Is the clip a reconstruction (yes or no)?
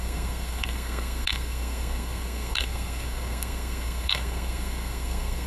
yes